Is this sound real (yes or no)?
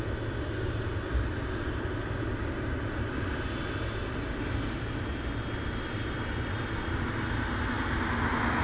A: yes